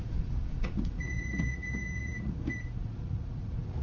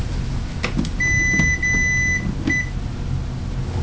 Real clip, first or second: second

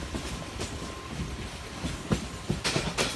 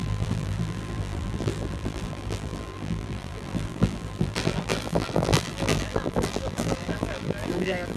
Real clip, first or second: first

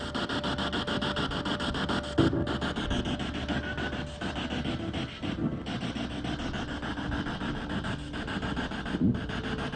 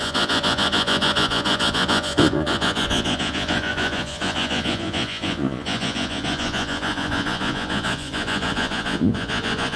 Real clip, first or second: first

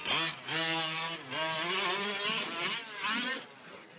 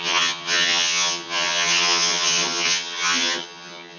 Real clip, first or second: first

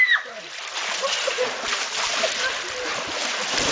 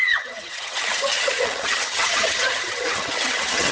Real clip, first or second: first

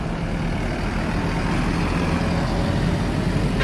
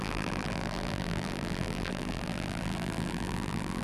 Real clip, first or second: first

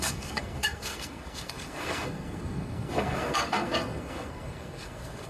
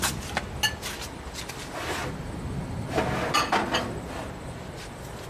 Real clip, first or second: second